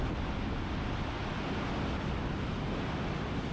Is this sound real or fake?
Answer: real